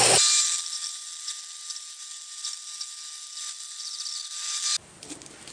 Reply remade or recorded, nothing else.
recorded